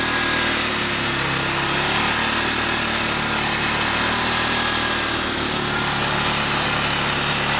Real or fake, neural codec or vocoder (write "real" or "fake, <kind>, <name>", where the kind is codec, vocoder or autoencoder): real